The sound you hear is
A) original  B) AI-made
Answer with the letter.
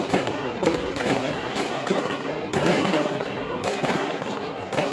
B